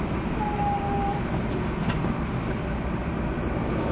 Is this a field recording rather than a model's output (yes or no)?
yes